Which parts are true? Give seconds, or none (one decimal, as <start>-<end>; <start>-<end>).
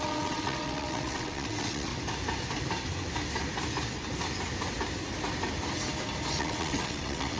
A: 1.9-6.3